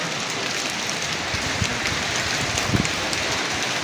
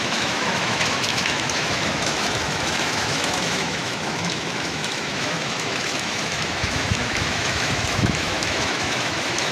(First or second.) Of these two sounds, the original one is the first